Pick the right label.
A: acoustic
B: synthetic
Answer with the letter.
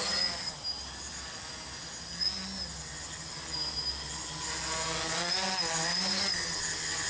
A